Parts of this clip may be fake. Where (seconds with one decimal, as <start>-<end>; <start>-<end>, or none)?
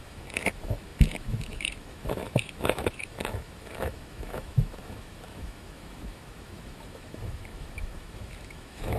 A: 0.0-9.0